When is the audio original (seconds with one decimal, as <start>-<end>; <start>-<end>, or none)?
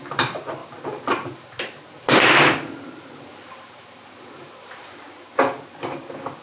0.6-2.1